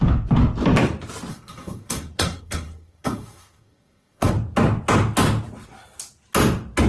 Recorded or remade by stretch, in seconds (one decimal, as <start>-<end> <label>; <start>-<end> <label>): 0.0-1.3 recorded; 1.3-4.3 remade; 4.3-6.9 recorded